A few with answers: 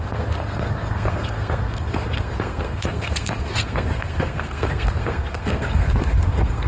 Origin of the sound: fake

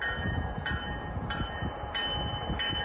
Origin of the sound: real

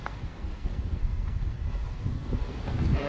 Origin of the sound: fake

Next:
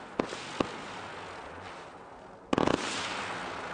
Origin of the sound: real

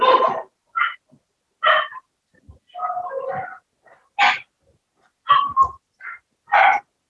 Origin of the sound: real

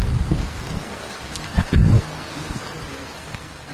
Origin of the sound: fake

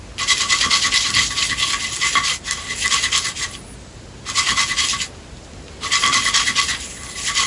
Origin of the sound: real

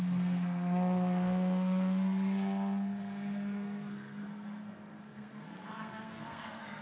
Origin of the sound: fake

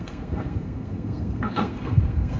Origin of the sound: fake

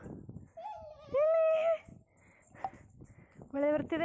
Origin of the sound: real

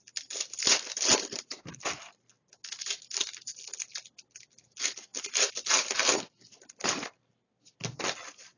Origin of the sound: real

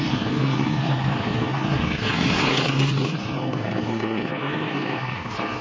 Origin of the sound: fake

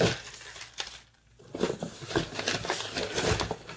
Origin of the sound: real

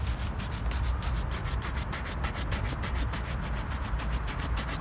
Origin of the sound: real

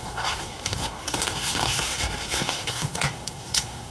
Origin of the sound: fake